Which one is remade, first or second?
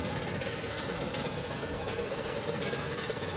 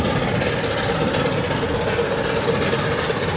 first